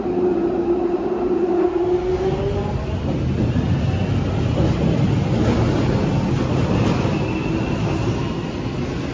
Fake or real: real